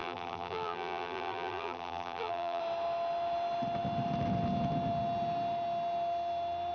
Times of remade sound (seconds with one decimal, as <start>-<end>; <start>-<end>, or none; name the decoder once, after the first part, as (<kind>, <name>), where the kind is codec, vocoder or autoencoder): 0.0-2.6 (vocoder, BigVGAN v2)